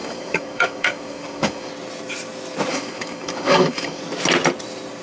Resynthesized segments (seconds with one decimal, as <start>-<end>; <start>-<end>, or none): 0.0-1.7; 2.7-4.0